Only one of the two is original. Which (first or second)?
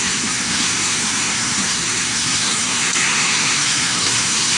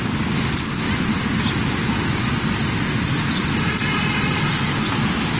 second